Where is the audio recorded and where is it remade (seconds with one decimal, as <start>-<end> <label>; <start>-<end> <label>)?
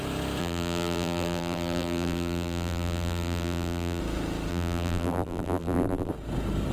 0.0-0.4 recorded; 0.4-4.0 remade; 4.0-4.5 recorded; 4.5-6.1 remade; 6.1-6.7 recorded